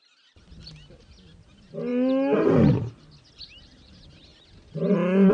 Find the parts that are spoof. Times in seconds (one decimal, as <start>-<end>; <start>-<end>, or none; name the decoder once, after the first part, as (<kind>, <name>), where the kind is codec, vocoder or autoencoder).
none